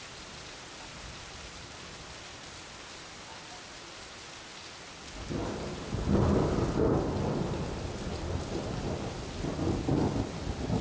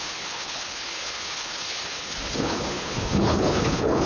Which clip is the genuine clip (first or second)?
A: first